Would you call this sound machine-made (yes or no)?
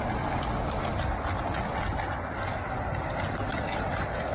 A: no